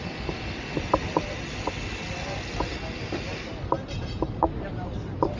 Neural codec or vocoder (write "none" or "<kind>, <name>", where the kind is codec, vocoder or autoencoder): none